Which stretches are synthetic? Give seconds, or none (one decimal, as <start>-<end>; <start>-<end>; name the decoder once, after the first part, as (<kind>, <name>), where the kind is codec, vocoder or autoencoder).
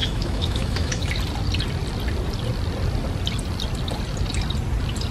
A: 0.0-1.1 (autoencoder, DAC-VAE)